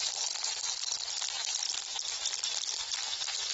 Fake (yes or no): yes